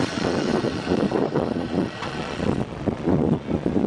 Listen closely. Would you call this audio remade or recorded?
remade